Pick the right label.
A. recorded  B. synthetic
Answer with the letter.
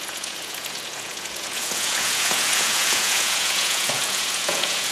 B